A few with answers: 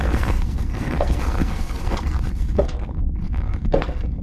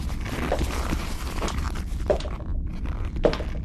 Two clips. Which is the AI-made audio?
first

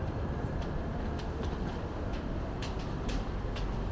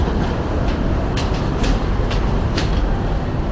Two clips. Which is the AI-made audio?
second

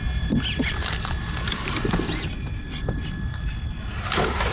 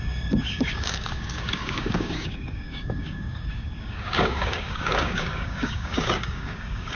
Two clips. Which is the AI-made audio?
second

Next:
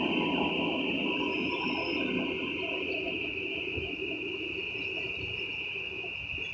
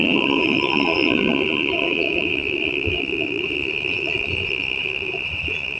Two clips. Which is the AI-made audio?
second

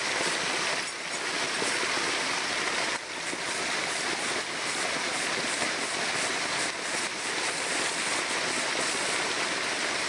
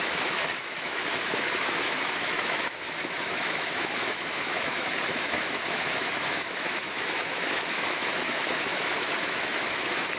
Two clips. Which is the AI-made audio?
second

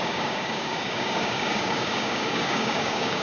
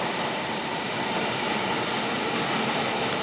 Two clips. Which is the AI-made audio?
first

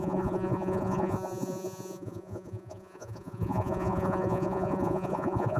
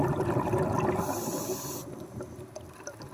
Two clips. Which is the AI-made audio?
first